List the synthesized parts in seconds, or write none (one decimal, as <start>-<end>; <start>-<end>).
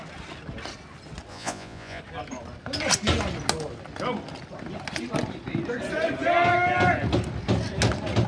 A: 1.3-2.0